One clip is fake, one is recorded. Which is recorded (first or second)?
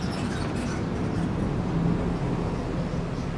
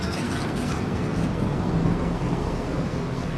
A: first